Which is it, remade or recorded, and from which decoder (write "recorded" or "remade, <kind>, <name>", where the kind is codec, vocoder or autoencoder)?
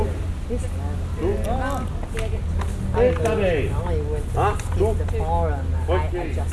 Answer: recorded